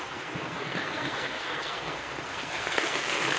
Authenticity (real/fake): fake